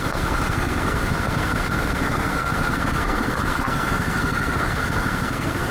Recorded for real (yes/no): no